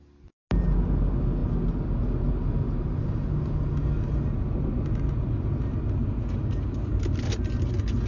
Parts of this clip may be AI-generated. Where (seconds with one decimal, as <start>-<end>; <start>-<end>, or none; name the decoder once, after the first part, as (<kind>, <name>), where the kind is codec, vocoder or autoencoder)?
none